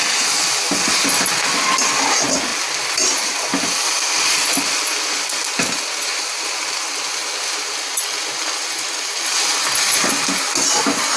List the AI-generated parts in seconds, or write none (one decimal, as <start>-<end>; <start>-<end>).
none